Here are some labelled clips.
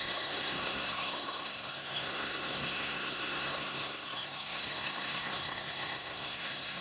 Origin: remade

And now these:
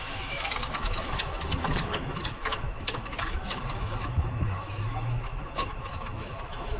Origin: remade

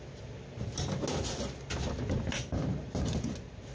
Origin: recorded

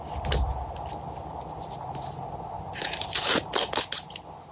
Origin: recorded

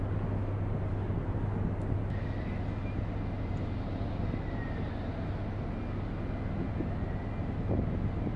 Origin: recorded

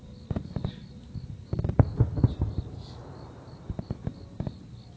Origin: recorded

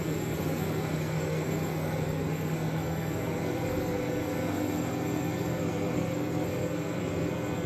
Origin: remade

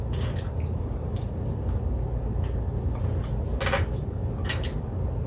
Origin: recorded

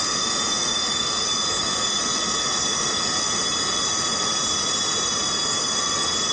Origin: recorded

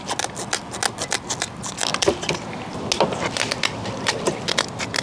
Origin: recorded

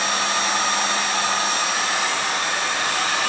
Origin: recorded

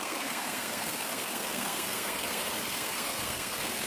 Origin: remade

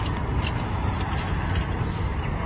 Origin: recorded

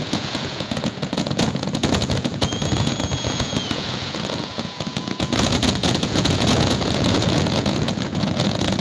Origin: remade